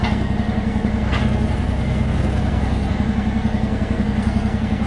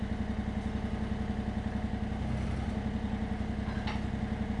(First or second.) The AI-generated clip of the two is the first